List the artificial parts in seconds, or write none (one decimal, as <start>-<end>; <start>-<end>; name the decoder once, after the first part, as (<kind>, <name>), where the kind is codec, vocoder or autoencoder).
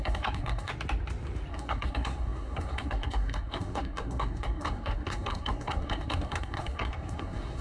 0.0-0.7 (codec, SNAC); 1.5-7.6